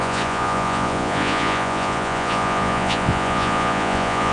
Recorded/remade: remade